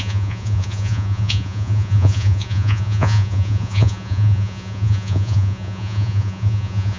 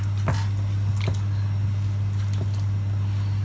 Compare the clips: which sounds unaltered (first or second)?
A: second